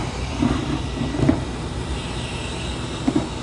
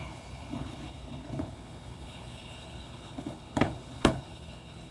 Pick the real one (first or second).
first